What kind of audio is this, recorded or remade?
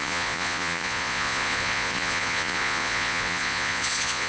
remade